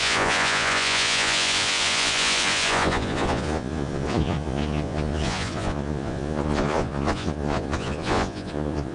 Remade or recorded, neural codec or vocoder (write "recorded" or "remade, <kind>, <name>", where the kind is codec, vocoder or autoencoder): remade, vocoder, Vocos